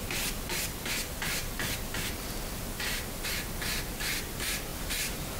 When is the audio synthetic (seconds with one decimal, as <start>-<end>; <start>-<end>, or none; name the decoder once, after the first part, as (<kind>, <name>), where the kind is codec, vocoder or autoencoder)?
4.7-5.4 (vocoder, BigVGAN v2)